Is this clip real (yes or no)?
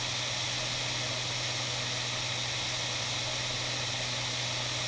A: yes